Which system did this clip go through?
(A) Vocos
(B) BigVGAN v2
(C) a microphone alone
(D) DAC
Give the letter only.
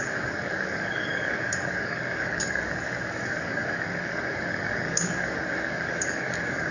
D